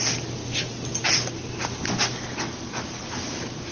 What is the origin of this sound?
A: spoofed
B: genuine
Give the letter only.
B